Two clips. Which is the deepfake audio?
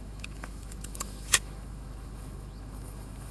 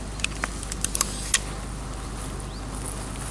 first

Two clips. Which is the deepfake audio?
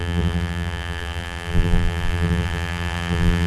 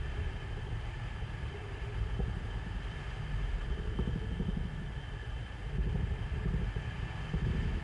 first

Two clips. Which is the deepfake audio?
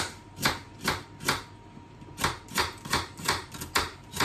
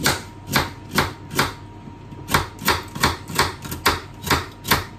first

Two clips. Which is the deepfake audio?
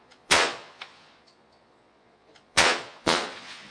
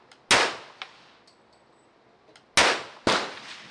first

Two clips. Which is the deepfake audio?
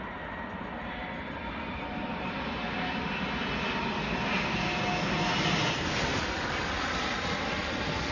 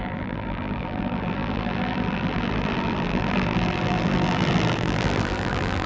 second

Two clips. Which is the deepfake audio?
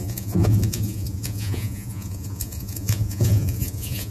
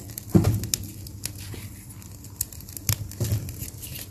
first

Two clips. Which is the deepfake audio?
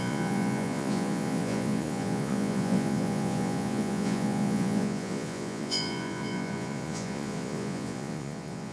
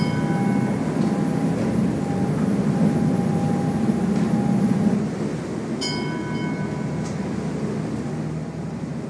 first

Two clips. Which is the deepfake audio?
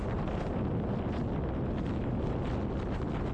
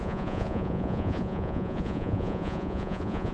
second